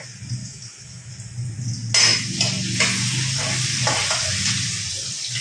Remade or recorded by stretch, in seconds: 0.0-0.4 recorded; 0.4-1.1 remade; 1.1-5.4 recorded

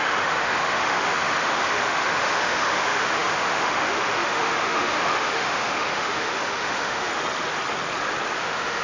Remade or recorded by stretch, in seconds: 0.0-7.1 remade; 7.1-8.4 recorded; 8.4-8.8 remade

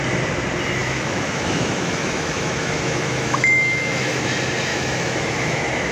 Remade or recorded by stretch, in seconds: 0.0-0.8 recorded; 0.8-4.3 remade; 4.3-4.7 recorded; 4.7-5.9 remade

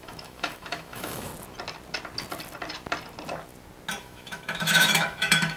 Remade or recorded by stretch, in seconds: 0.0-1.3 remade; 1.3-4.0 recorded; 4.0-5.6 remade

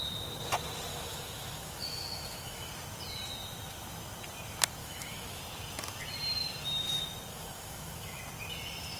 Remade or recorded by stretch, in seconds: 0.0-0.9 recorded; 0.9-2.7 remade; 2.7-4.8 recorded; 4.8-5.4 remade; 5.4-7.3 recorded; 7.3-8.2 remade; 8.2-9.0 recorded

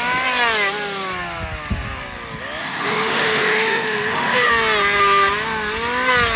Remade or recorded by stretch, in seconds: 0.0-2.6 recorded; 2.6-4.5 remade; 4.5-6.4 recorded

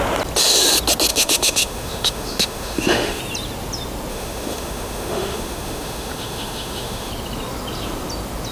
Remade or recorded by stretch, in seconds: 0.0-1.1 recorded; 1.1-3.2 remade; 3.2-4.1 recorded; 4.1-7.1 remade; 7.1-8.5 recorded

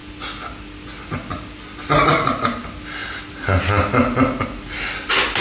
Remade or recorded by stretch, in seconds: 0.0-5.4 recorded